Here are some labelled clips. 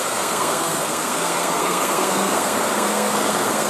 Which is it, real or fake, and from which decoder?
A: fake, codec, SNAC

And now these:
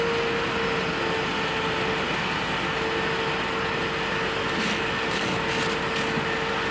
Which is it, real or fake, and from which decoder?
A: real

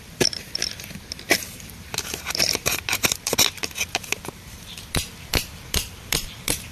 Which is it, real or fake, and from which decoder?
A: fake, vocoder, BigVGAN v2